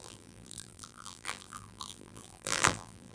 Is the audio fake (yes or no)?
yes